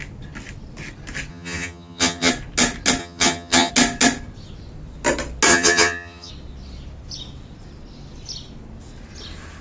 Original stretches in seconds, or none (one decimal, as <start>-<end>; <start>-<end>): 0.0-1.3; 2.3-3.0; 3.7-5.5; 6.3-9.6